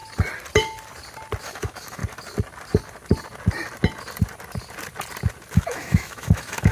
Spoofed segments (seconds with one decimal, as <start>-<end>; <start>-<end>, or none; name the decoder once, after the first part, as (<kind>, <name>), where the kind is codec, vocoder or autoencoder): 1.4-2.0 (autoencoder, DAC-VAE); 5.5-6.7